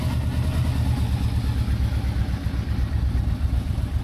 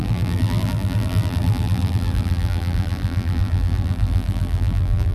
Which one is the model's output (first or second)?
second